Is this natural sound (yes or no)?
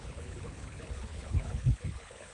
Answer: no